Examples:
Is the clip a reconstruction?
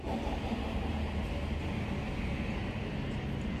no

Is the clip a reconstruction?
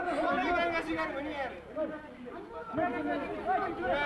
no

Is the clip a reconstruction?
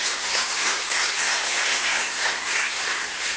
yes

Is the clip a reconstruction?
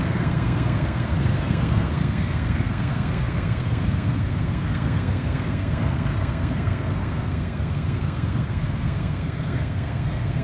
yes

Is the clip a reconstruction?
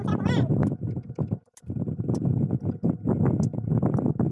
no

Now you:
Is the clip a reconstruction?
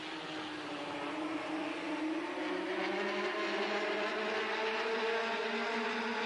no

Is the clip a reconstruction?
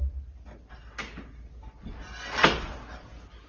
no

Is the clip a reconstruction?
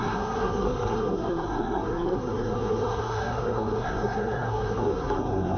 yes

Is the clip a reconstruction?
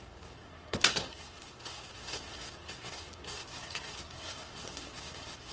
yes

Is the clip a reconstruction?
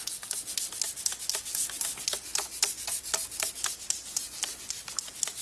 no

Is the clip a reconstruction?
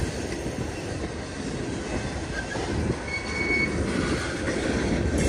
no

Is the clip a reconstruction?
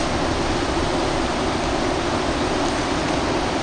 no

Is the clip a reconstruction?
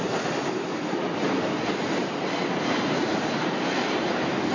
no